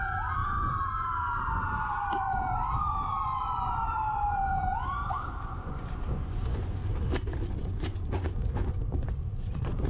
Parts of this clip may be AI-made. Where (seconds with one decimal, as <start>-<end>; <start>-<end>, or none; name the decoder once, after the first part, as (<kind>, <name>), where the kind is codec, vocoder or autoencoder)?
0.0-6.8 (vocoder, Vocos); 7.5-9.9